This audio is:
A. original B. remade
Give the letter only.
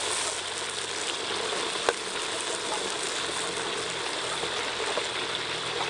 A